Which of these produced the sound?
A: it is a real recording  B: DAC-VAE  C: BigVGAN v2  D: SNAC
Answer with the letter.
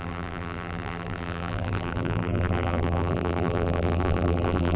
C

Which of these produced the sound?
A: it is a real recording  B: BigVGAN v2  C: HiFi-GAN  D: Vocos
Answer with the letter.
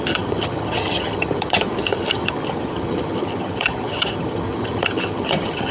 C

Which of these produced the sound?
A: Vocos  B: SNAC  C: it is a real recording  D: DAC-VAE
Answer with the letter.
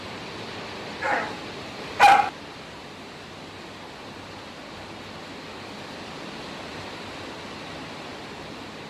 C